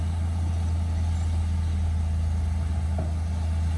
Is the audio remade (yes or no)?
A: no